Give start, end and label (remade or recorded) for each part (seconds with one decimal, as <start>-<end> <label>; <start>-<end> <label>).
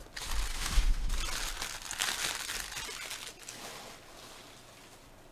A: 0.0-0.5 recorded; 0.5-1.1 remade; 1.1-5.3 recorded